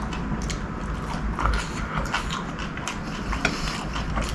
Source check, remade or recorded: recorded